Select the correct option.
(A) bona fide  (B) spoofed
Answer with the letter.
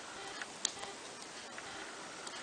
A